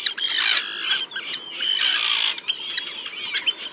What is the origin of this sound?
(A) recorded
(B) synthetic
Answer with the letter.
A